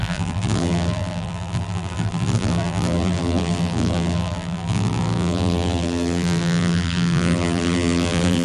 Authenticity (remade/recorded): remade